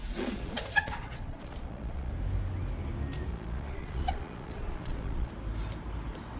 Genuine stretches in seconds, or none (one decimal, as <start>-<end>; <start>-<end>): 2.1-3.3; 5.3-6.4